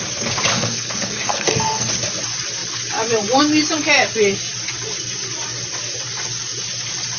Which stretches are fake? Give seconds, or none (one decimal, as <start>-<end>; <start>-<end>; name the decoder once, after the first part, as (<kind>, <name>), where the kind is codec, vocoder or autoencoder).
0.5-1.9 (codec, SNAC)